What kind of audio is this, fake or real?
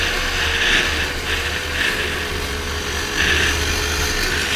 real